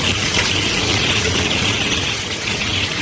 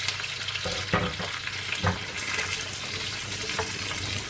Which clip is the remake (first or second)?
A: first